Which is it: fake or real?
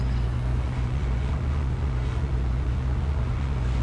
fake